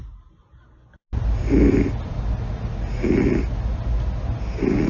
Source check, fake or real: real